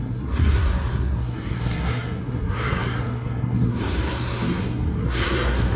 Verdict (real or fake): fake